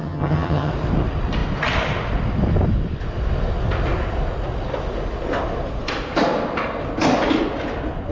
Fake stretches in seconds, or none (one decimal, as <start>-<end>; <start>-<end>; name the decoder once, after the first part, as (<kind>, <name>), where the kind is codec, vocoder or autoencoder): 0.0-0.7 (vocoder, HiFi-GAN)